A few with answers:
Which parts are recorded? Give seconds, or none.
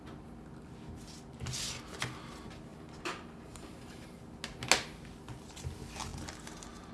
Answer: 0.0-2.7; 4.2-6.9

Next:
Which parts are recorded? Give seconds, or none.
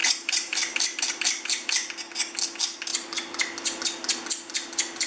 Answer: 1.7-5.1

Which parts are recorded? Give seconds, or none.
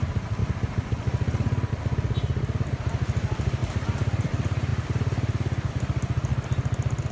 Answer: 0.0-3.6; 4.3-6.3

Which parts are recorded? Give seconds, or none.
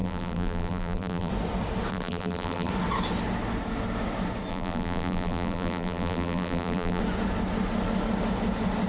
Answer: 1.3-1.9; 2.7-4.5; 7.0-8.9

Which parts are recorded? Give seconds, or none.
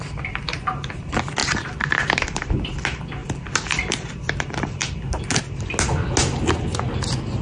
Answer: 0.0-1.4; 2.5-3.2; 4.9-7.4